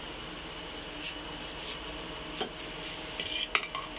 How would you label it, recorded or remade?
recorded